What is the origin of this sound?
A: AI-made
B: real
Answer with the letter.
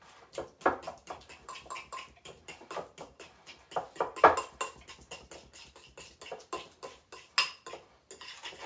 B